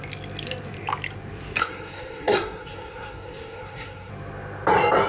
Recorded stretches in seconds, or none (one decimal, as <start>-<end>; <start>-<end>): 0.0-1.6; 4.1-5.1

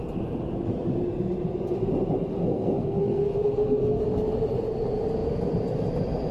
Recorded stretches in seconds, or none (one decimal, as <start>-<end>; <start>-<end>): 0.0-2.4; 4.0-6.3

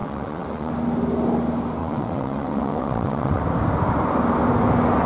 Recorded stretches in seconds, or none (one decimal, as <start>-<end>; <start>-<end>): 0.7-1.8; 3.4-5.1

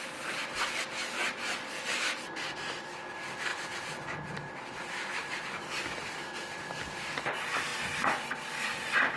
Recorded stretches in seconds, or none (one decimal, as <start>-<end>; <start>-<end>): 0.0-9.2

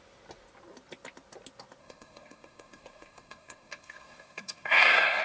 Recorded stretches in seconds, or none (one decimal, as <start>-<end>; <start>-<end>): 0.0-1.8

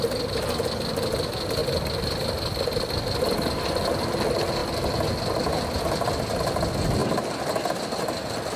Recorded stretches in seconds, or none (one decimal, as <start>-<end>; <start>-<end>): 0.0-8.6

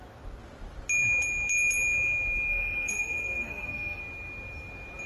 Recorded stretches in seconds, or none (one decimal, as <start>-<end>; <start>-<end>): 0.0-2.5; 4.0-5.1